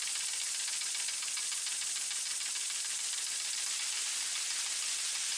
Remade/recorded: recorded